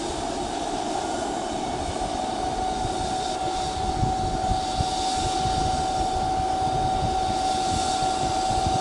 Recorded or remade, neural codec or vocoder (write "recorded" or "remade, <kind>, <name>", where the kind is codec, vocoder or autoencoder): recorded